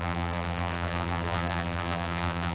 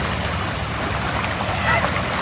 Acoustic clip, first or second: second